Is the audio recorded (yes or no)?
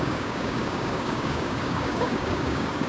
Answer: no